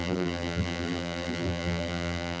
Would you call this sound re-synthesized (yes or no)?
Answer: yes